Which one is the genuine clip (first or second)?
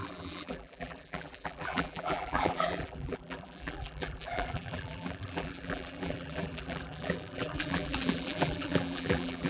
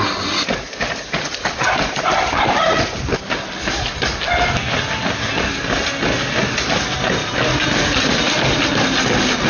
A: second